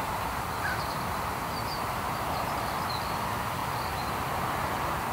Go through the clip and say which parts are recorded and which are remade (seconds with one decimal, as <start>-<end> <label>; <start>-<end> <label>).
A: 0.0-1.4 recorded; 1.4-2.1 remade; 2.1-5.1 recorded